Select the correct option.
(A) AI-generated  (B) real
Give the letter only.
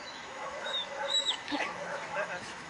A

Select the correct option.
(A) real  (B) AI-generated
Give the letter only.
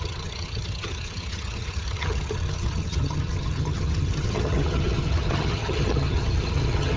B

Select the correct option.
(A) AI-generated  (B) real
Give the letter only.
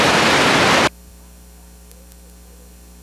B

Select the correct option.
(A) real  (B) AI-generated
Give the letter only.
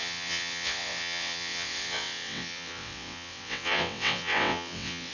B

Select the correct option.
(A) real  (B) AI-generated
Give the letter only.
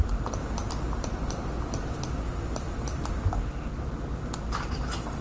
A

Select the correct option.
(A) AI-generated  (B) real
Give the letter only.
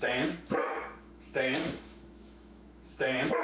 A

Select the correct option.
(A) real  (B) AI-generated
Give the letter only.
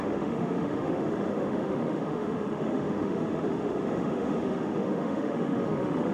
B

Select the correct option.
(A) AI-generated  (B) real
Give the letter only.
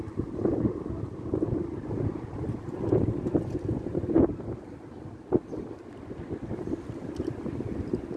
B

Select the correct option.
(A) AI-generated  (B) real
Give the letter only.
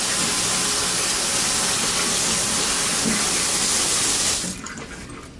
B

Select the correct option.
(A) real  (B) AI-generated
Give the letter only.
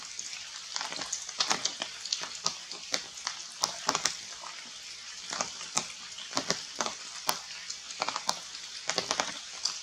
A